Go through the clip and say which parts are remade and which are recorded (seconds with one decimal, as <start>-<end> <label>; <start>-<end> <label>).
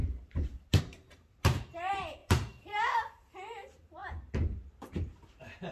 0.0-4.0 remade; 4.0-4.9 recorded; 4.9-5.7 remade